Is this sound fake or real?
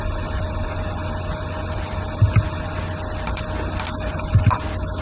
real